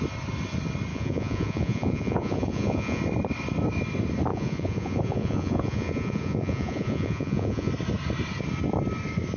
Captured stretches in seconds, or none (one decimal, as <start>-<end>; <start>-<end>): 0.0-0.9; 3.0-4.3; 7.7-9.4